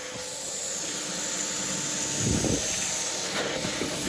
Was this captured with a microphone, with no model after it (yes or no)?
yes